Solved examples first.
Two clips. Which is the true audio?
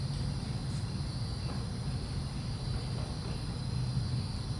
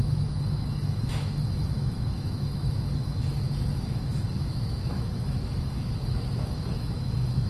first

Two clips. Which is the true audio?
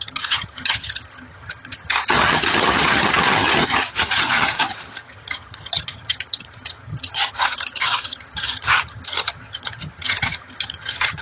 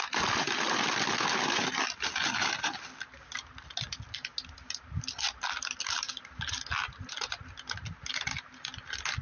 second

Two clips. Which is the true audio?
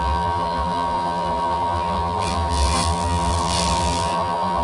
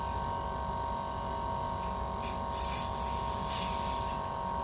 second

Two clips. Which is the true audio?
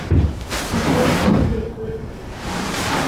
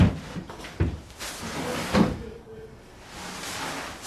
second